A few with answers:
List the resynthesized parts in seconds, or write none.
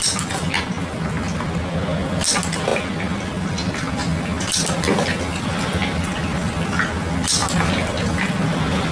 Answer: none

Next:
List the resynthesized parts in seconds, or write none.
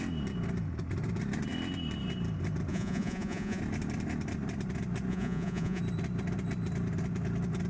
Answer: 2.7-3.6; 5.1-5.8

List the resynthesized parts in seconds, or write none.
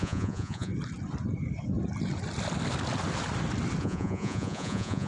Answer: 0.0-0.7; 3.8-5.1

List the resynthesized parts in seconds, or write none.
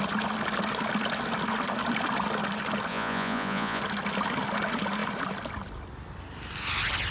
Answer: 2.9-3.8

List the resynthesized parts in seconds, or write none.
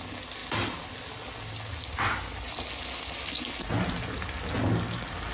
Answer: none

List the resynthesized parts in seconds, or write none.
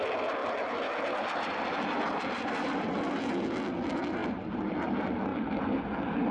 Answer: none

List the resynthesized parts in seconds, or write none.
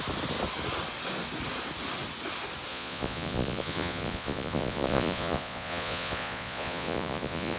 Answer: 2.7-7.6